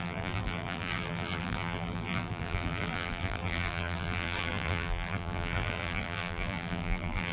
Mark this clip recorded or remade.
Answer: remade